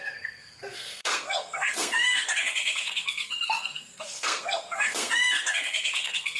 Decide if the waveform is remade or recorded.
remade